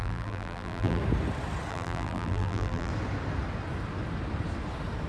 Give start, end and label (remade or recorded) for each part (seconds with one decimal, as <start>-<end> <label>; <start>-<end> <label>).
0.0-1.0 remade; 1.0-1.7 recorded; 1.7-2.9 remade; 2.9-5.1 recorded